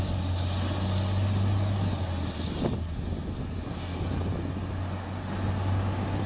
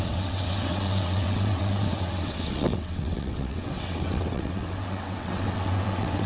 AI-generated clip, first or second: second